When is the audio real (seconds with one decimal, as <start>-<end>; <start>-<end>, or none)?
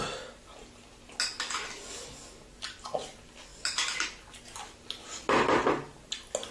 0.0-6.5